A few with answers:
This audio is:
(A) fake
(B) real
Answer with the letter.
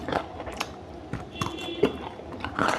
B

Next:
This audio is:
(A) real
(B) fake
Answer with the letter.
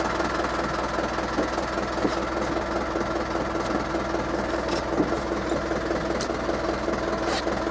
A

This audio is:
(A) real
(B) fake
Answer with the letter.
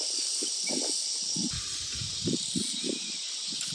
A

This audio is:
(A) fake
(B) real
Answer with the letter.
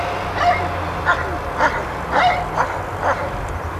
B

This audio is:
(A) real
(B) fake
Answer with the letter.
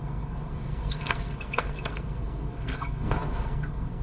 B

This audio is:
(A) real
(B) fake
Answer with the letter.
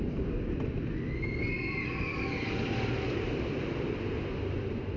A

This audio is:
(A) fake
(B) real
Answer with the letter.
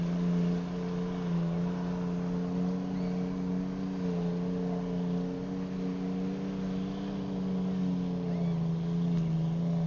B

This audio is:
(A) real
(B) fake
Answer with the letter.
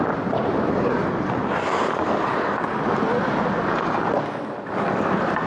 A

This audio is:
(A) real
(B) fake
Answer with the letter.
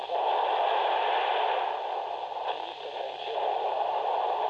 A